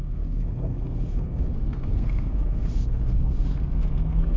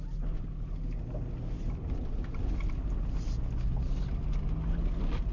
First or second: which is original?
second